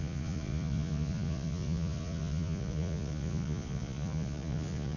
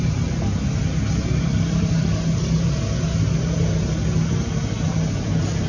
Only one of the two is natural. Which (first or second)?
second